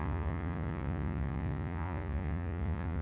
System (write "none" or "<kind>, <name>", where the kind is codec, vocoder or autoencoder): vocoder, Vocos